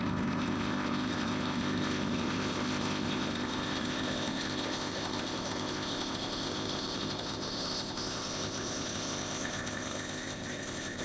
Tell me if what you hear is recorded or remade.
remade